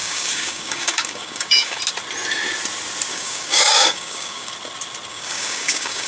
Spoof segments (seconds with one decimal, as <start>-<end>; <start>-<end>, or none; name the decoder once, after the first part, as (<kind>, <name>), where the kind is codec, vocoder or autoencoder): 0.0-1.8 (codec, DAC); 3.1-4.5; 5.1-6.1